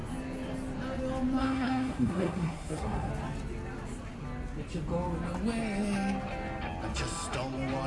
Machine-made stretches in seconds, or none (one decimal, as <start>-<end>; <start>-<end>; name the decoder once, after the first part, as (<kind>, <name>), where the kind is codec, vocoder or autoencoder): 1.4-3.1 (codec, SNAC)